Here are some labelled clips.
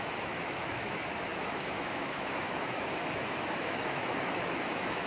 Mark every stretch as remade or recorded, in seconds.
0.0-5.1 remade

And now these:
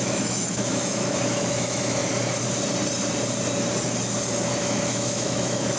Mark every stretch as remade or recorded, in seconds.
0.0-2.0 remade; 2.0-4.6 recorded; 4.6-5.8 remade

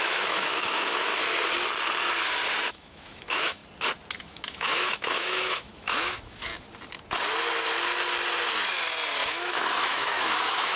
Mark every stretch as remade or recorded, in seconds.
0.0-1.1 remade; 1.1-2.7 recorded; 2.7-3.6 remade; 3.6-4.2 recorded; 4.2-6.5 remade; 6.5-9.3 recorded; 9.3-10.8 remade

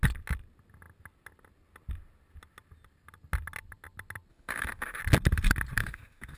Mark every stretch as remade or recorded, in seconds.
0.0-4.3 recorded; 4.3-5.0 remade; 5.0-5.8 recorded; 5.8-6.4 remade

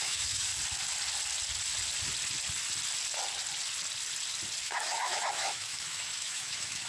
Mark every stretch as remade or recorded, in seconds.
0.0-0.5 remade; 0.5-4.6 recorded; 4.6-6.9 remade

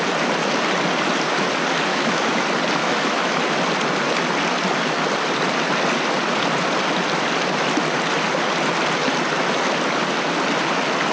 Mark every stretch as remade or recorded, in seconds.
0.0-1.9 recorded; 1.9-2.4 remade; 2.4-2.8 recorded; 2.8-3.4 remade; 3.4-11.1 recorded